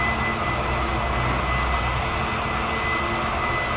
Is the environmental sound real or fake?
real